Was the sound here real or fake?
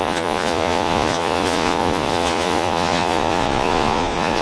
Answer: fake